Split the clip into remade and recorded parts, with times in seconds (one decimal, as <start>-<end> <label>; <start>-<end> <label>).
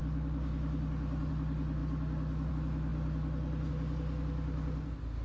0.0-5.2 recorded